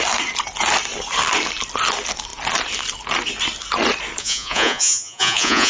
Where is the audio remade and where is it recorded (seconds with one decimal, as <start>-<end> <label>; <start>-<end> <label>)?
0.0-4.2 recorded; 4.2-5.7 remade

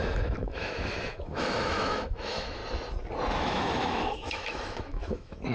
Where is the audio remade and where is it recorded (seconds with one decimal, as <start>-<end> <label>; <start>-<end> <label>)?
0.0-2.6 remade; 2.6-3.4 recorded; 3.4-5.5 remade

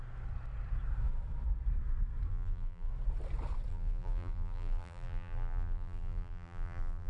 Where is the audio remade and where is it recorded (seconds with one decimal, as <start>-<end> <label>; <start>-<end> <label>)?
0.0-2.3 recorded; 2.3-2.9 remade; 2.9-3.7 recorded; 3.7-7.1 remade

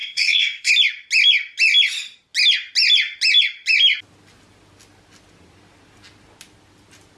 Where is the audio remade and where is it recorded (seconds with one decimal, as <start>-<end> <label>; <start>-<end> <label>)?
0.0-0.7 remade; 0.7-7.2 recorded